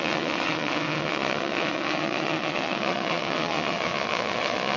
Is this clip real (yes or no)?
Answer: no